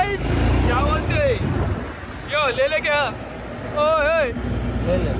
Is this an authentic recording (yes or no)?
yes